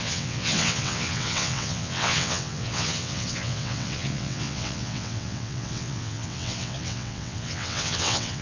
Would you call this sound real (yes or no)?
no